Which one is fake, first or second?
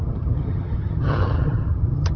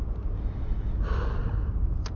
first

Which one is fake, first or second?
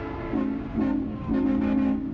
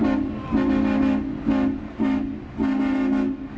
first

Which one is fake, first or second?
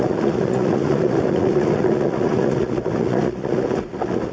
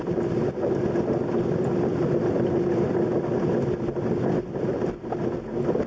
first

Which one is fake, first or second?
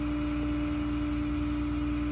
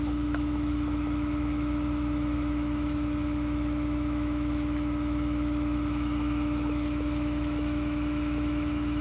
second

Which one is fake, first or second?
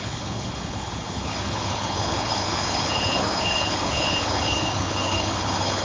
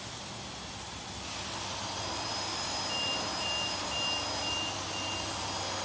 first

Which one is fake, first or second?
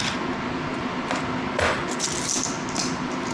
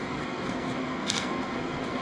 second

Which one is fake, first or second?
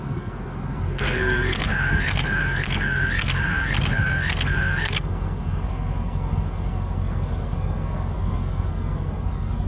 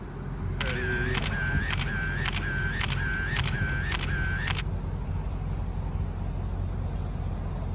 first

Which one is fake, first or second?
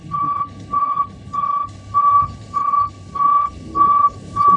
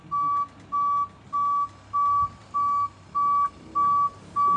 first